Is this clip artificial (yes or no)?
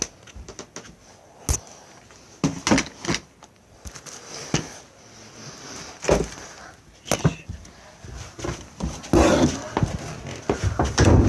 no